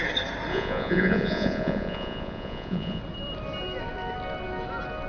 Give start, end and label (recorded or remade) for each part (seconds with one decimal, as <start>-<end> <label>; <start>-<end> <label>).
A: 0.0-0.5 recorded; 0.5-3.0 remade; 3.0-5.1 recorded